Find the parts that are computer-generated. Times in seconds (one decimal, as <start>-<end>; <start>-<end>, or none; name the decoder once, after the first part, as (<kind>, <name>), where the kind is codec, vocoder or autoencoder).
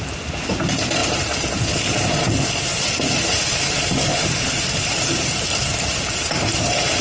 none